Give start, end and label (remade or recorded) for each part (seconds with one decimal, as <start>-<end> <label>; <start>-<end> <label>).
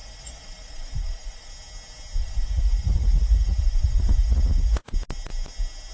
0.0-1.5 remade; 1.5-2.2 recorded; 2.2-4.9 remade; 4.9-5.9 recorded